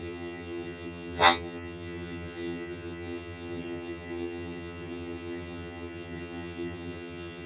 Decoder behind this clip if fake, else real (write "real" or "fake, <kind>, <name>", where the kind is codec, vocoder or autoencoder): fake, vocoder, HiFi-GAN